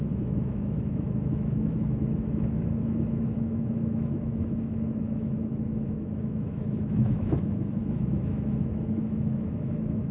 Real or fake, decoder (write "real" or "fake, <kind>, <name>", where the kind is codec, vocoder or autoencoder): fake, autoencoder, DAC-VAE